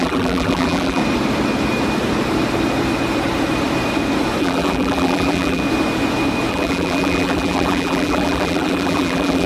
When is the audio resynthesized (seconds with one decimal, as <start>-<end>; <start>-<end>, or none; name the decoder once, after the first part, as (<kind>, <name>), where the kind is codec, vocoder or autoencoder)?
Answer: 0.0-1.0 (vocoder, BigVGAN v2); 4.4-5.6; 6.5-9.5

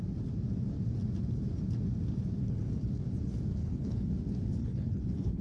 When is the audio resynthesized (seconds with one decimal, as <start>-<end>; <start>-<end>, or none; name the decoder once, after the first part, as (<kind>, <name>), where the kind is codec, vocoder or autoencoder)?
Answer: 2.4-3.0 (codec, HILCodec); 3.5-4.1; 4.6-5.4

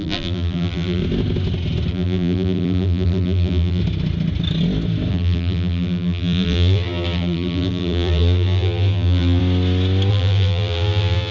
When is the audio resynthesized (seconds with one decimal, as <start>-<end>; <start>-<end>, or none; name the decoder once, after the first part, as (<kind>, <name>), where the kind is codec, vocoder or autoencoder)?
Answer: 0.0-1.0 (vocoder, BigVGAN v2); 1.9-3.8; 5.1-9.4; 10.1-11.3